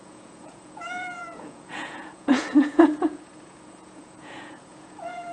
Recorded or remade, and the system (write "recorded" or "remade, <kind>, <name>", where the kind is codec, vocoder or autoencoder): remade, vocoder, Vocos